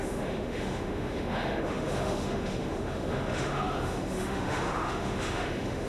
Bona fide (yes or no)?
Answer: no